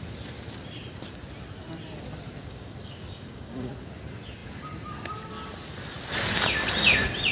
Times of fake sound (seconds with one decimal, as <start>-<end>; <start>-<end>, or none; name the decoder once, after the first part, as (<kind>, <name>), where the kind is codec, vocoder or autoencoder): 2.4-3.7 (codec, DAC)